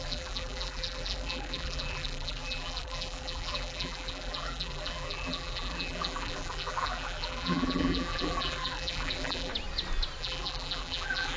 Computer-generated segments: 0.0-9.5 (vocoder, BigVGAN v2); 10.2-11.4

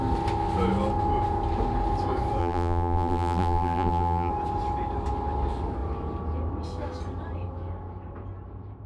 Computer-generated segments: 2.4-4.3 (vocoder, BigVGAN v2)